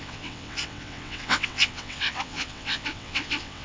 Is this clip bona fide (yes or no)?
no